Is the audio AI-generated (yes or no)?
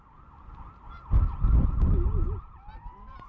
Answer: no